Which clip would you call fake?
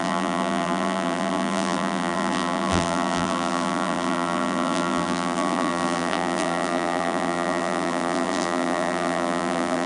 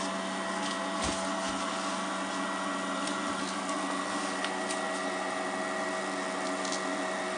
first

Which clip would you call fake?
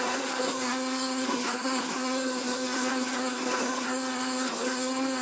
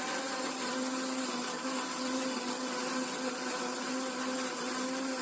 first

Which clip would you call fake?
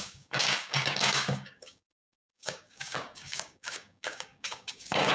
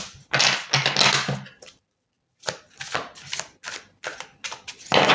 first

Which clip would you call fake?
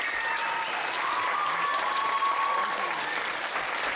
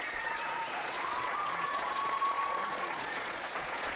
second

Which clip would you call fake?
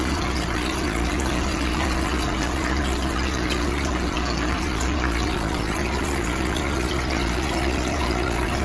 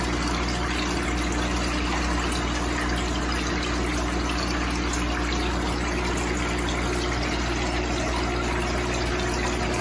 first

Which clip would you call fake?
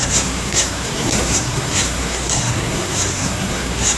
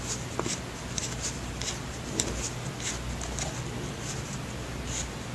first